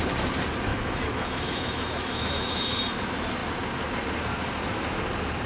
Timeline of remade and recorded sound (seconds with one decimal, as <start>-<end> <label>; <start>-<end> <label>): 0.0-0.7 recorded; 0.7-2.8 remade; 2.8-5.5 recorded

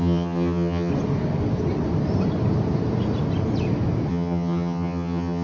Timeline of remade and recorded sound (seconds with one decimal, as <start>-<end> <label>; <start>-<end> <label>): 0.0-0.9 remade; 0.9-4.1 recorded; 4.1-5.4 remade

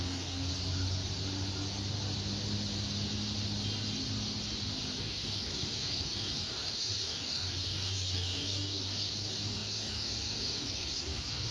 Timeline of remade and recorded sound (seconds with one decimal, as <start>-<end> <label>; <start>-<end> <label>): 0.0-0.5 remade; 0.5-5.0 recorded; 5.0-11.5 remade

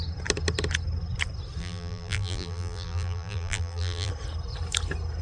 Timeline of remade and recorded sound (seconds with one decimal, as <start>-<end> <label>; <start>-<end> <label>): 0.0-1.6 recorded; 1.6-4.1 remade; 4.1-5.2 recorded